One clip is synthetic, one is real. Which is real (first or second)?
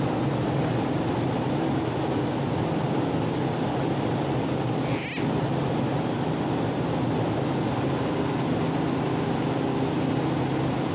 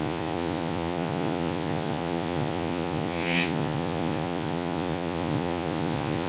first